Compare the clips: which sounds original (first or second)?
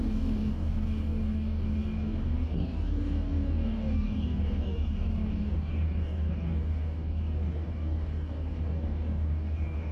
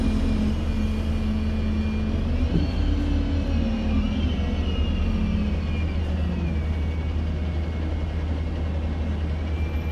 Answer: second